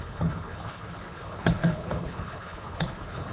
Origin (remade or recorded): remade